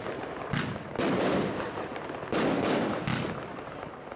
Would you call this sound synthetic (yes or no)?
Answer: no